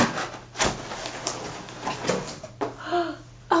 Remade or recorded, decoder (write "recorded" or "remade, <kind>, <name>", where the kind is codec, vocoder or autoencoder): recorded